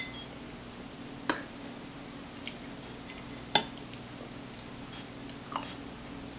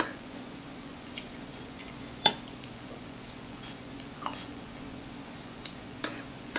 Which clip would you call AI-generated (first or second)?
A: second